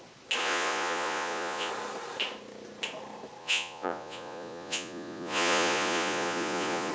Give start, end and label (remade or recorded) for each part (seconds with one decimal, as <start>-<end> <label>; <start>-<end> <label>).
0.0-0.4 recorded; 0.4-1.7 remade; 1.7-3.4 recorded; 3.4-6.9 remade